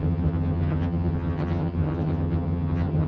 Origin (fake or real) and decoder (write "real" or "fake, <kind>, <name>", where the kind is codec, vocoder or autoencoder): fake, vocoder, HiFi-GAN